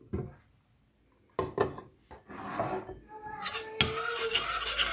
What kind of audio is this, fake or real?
real